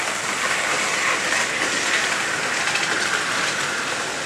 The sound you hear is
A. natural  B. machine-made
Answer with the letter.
A